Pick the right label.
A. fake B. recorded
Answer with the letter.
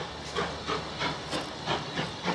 B